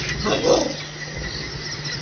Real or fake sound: real